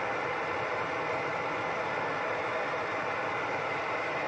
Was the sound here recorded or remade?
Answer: recorded